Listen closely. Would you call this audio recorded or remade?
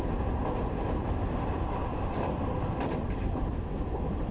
recorded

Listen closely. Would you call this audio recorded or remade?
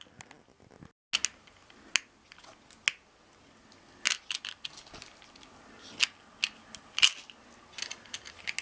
recorded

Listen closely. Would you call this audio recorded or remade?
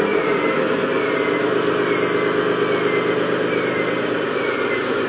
recorded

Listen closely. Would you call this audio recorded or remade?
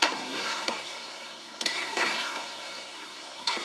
remade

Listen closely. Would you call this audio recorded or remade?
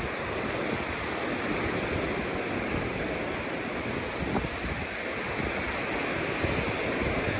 recorded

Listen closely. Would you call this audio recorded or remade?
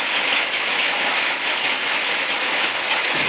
remade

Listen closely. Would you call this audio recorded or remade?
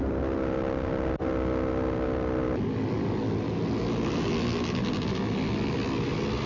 recorded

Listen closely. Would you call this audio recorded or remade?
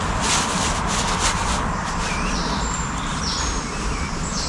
remade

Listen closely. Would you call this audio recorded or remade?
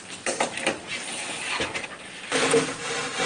recorded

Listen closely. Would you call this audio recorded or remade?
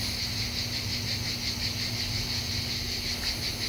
recorded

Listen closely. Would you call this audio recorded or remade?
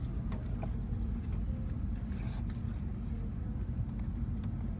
recorded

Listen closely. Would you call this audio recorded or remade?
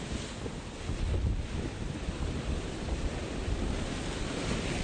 recorded